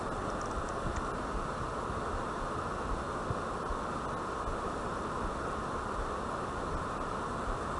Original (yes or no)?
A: yes